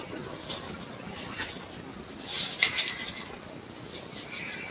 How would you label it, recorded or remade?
recorded